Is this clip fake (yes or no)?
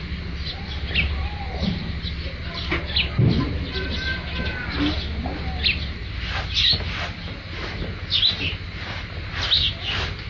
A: no